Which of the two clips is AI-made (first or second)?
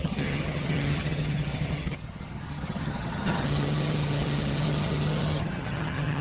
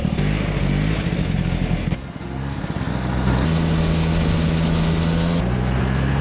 first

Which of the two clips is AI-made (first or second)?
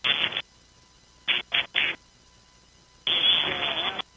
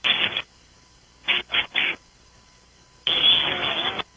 second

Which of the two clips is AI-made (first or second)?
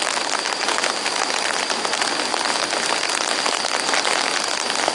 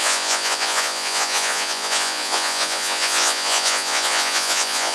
second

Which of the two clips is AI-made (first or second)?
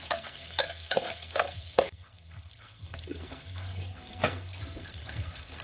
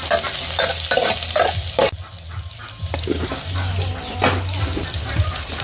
first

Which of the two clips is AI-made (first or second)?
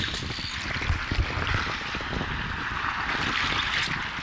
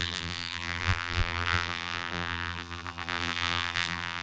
second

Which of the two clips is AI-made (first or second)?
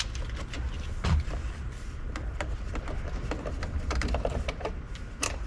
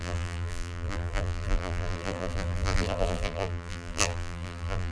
second